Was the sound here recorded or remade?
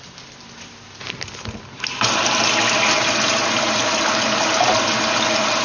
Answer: recorded